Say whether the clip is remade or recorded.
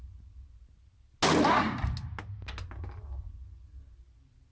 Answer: recorded